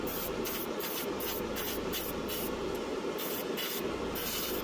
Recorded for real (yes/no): no